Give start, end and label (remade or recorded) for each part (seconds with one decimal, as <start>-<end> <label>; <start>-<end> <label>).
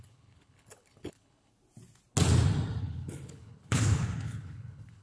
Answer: 0.0-1.5 remade; 1.5-2.8 recorded; 2.8-5.0 remade